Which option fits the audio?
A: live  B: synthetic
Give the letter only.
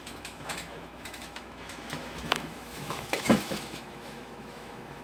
B